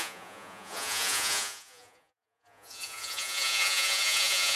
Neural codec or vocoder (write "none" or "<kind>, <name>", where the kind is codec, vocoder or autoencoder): vocoder, Vocos